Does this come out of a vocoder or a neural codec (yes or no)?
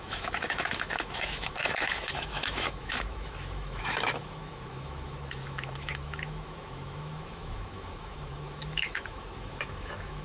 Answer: yes